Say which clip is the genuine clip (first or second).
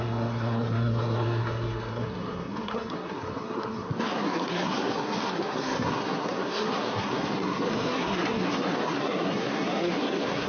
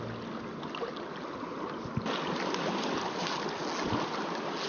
second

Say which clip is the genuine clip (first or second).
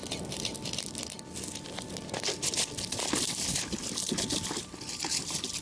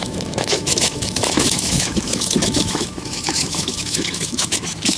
first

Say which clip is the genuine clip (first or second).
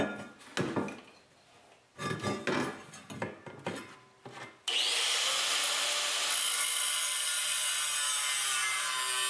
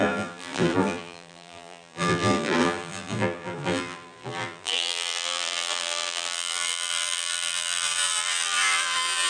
first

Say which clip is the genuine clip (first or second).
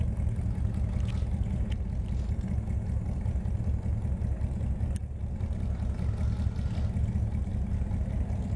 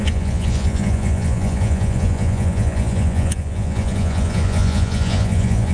first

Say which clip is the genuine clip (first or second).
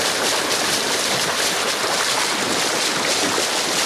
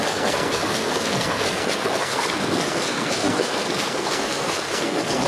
first